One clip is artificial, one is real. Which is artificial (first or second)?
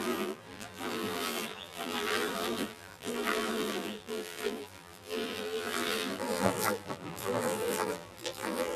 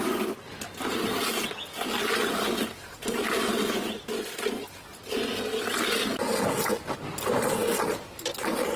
first